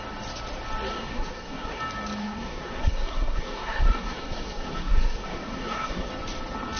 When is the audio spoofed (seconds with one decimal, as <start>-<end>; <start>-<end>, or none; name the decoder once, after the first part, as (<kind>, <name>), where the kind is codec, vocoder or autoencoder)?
0.9-1.8 (codec, SNAC); 2.2-6.1